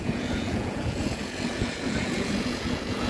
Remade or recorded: remade